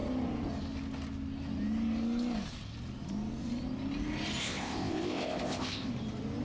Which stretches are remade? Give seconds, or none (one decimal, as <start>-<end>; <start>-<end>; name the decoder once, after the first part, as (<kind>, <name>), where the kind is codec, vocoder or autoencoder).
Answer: 4.4-5.9 (codec, ZipCodec)